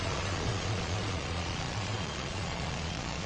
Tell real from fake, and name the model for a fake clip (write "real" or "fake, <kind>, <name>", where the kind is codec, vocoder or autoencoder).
fake, vocoder, Vocos